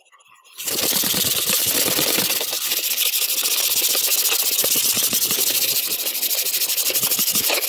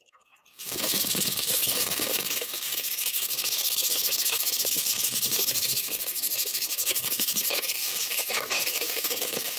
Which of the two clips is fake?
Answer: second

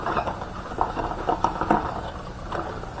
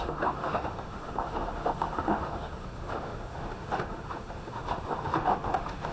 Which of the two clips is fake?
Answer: second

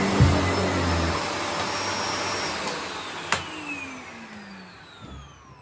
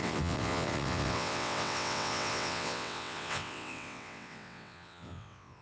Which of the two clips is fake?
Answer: second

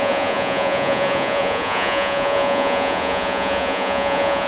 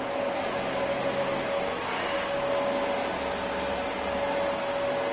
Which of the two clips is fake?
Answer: first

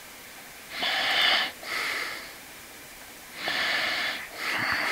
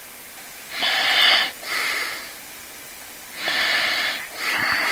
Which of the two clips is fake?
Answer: first